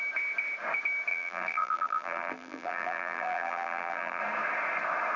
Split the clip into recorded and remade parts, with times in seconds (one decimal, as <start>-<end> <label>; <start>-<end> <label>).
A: 0.0-1.1 recorded; 1.1-4.2 remade; 4.2-5.2 recorded